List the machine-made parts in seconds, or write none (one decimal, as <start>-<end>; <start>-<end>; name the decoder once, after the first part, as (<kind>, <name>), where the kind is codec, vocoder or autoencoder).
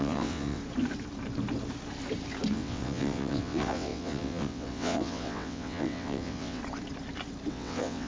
0.0-0.6 (vocoder, WaveNeXt); 2.5-6.6; 7.5-8.1